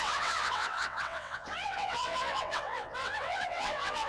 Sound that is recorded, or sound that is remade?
remade